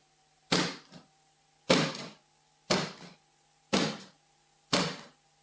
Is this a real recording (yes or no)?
yes